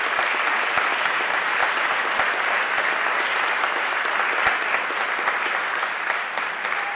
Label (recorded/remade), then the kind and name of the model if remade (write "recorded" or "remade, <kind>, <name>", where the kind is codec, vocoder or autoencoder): recorded